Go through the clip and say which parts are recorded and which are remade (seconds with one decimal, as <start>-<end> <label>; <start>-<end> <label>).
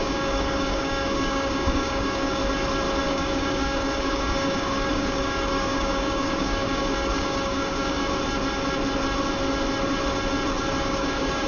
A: 0.0-2.4 remade; 2.4-3.0 recorded; 3.0-8.0 remade; 8.0-10.8 recorded; 10.8-11.5 remade